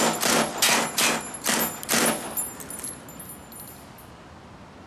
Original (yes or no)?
yes